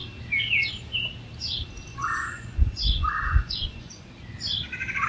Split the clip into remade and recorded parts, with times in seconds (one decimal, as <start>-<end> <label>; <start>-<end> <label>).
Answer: 0.0-1.9 recorded; 1.9-4.1 remade; 4.1-5.1 recorded